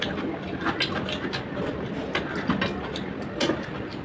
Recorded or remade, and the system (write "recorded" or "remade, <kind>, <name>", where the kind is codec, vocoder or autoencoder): recorded